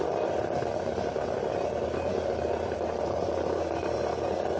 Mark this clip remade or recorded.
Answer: remade